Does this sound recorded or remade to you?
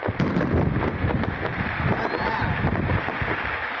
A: recorded